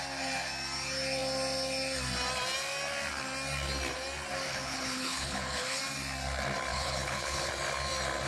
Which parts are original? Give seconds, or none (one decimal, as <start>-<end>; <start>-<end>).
0.0-4.5; 5.8-6.7; 7.5-8.3